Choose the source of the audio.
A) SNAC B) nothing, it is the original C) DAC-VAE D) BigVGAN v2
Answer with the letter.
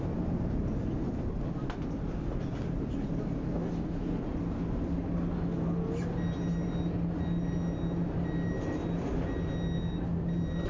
B